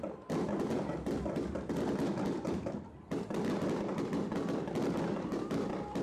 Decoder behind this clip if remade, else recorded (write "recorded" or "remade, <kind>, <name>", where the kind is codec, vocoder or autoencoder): recorded